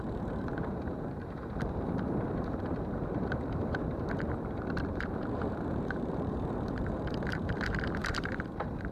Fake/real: fake